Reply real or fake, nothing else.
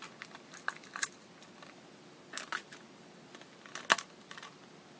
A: real